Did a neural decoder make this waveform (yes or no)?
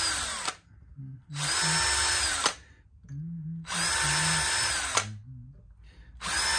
no